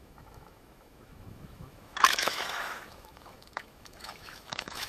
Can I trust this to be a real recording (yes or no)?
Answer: no